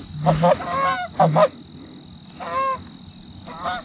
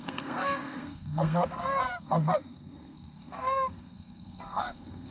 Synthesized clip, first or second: second